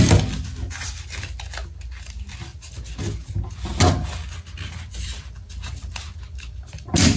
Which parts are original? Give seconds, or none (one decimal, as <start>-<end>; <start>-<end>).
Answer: 0.0-7.2